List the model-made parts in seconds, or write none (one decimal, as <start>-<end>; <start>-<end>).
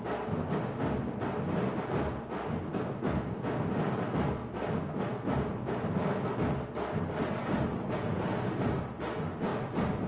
none